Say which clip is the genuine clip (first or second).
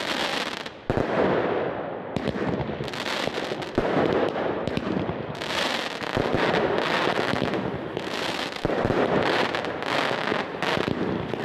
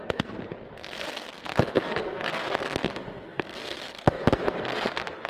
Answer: first